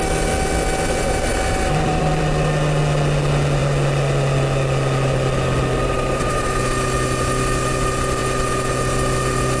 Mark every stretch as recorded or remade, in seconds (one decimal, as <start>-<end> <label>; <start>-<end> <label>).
0.0-9.6 recorded